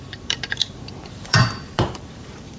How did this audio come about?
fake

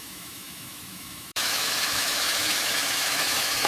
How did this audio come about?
fake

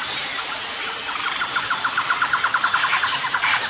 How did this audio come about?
real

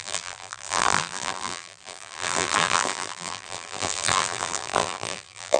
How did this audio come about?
fake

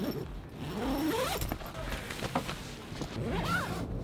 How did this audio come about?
real